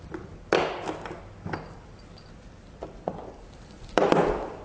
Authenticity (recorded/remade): recorded